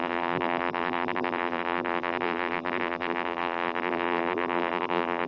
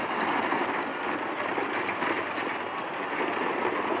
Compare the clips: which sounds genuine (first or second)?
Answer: second